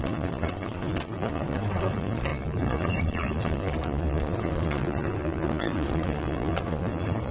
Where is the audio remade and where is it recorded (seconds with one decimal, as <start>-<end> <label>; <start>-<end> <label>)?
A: 0.0-7.3 remade